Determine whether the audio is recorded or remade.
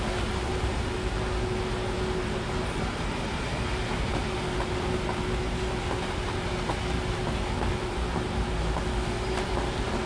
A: recorded